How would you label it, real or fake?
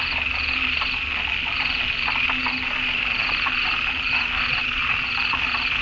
real